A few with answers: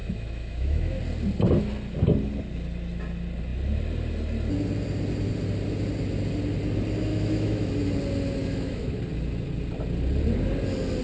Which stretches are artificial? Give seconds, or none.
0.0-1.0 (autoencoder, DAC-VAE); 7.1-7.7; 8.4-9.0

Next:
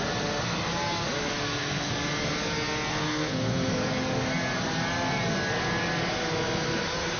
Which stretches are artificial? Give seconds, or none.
1.4-1.9 (codec, SNAC); 2.9-3.7